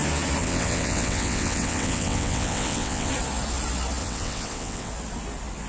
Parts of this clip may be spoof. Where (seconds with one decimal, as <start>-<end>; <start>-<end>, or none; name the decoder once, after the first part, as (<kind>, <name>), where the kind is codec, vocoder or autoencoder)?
0.4-3.1 (vocoder, WaveNeXt); 4.0-4.9